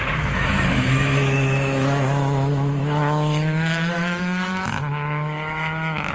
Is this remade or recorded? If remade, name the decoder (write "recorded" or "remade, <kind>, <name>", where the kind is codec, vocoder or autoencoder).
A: remade, autoencoder, DAC-VAE